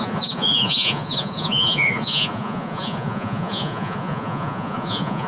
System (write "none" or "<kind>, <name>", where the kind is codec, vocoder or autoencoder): vocoder, Vocos